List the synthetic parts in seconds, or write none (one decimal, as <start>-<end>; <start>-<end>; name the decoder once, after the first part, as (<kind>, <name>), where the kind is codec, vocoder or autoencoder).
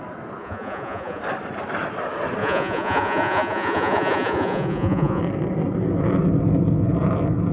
0.4-1.2 (vocoder, Vocos); 2.4-5.2